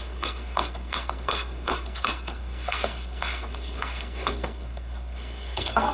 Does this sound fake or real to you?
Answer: fake